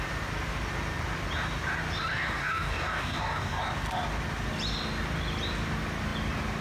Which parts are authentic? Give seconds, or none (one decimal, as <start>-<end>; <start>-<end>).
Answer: 0.0-2.1; 3.6-6.6